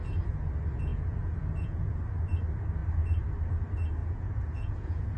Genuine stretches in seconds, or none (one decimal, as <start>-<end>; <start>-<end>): 0.0-0.9; 1.9-4.0